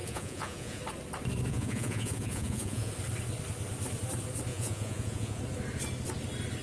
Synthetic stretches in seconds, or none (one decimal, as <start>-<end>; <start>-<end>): 0.0-0.8; 1.5-2.9; 4.5-5.4